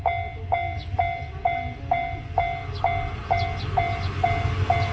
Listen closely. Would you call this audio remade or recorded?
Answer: recorded